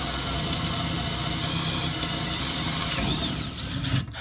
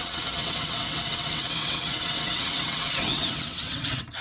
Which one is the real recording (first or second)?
first